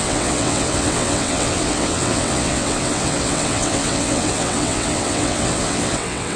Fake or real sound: fake